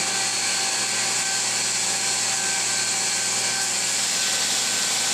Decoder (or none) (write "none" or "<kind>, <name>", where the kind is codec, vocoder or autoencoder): none